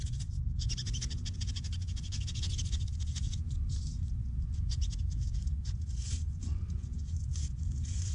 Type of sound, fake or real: fake